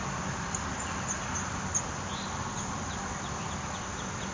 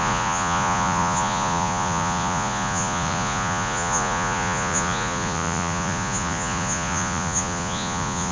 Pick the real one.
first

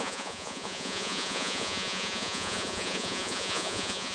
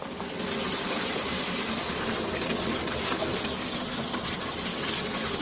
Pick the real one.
second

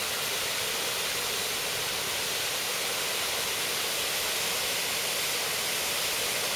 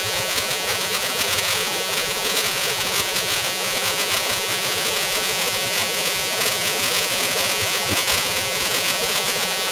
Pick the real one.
first